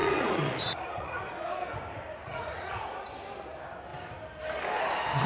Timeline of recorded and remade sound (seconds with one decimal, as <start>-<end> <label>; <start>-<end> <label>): 0.0-1.2 remade; 1.2-2.2 recorded; 2.2-2.9 remade; 2.9-5.3 recorded